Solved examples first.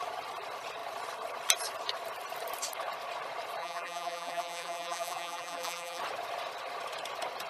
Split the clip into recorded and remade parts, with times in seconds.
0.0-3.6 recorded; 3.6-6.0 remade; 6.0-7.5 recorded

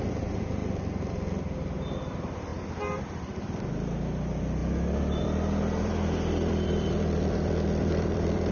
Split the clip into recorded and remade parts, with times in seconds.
0.0-0.6 remade; 0.6-2.1 recorded; 2.1-2.5 remade; 2.5-3.0 recorded; 3.0-4.6 remade; 4.6-5.2 recorded; 5.2-8.5 remade

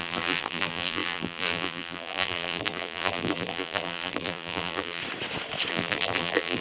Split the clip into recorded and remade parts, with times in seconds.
0.0-5.0 remade; 5.0-5.7 recorded; 5.7-6.6 remade